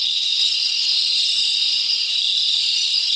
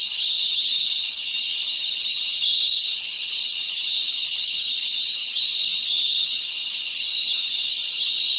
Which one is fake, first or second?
second